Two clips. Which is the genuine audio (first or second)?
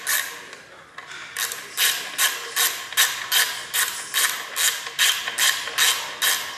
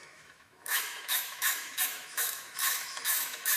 first